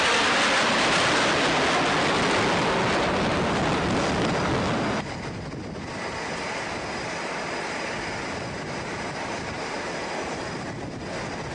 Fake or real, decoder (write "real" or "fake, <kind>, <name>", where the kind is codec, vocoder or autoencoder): real